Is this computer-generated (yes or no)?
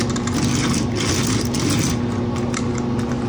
no